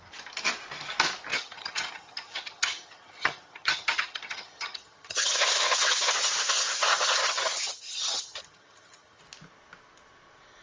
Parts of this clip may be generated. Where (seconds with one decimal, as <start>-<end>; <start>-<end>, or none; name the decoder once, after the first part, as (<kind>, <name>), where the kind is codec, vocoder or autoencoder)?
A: 1.3-5.3 (vocoder, HiFi-GAN); 7.2-9.2